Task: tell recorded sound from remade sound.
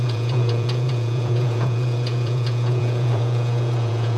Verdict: remade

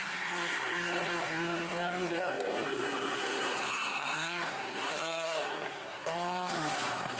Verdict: remade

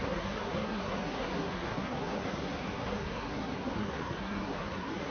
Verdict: remade